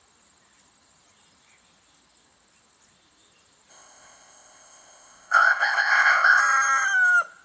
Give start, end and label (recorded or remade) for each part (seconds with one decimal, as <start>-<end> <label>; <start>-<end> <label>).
0.0-3.7 recorded; 3.7-6.4 remade; 6.4-7.4 recorded